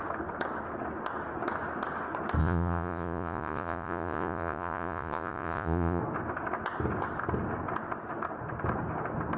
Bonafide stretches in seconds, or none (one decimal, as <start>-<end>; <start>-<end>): 0.0-2.4; 6.0-9.4